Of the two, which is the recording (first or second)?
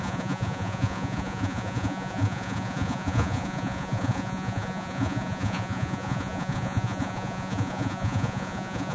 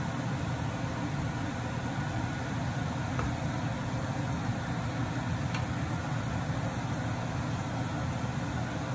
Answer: second